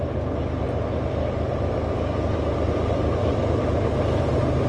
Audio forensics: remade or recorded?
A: recorded